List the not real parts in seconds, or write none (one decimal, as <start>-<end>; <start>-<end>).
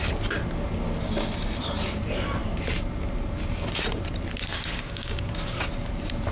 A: 4.5-5.7